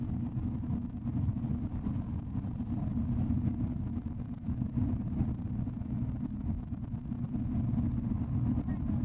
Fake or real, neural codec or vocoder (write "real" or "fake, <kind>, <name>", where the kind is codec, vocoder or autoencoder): real